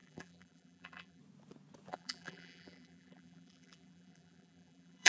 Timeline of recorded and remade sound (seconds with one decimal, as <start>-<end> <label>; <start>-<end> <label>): 0.0-1.2 remade; 1.2-1.9 recorded; 1.9-5.1 remade